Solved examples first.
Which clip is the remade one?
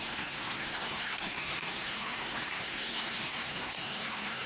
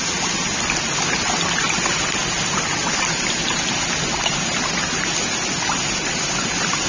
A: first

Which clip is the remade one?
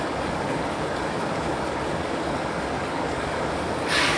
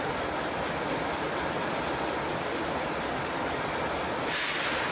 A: first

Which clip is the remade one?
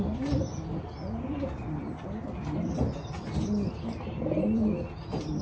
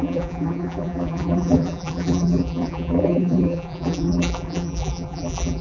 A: second